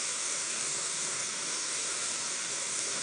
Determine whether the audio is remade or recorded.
remade